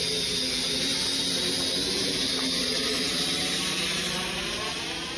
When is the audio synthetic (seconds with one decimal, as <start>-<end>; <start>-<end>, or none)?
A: 0.9-3.2; 3.9-4.6